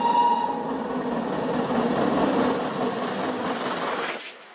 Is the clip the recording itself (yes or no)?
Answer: yes